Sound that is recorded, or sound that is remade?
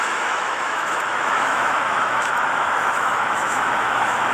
remade